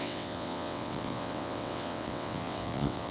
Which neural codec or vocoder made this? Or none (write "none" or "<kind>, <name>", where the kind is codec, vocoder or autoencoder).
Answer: vocoder, WaveNeXt